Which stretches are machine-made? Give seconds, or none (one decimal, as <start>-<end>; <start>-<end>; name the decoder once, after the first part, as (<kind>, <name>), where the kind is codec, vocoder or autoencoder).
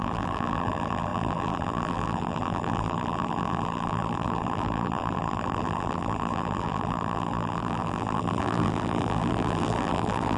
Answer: 0.0-10.4 (vocoder, BigVGAN v2)